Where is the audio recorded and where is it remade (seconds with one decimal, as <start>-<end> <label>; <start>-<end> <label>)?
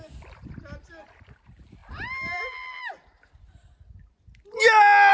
0.0-5.1 recorded